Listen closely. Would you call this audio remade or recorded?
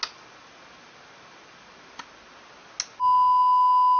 recorded